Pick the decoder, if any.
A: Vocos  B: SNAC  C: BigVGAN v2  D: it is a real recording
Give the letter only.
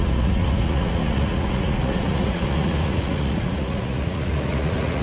A